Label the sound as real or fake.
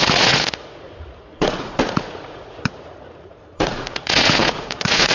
fake